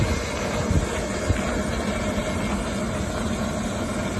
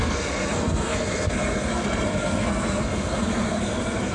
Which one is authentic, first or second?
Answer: first